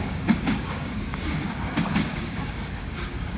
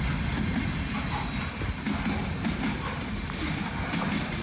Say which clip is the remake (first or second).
first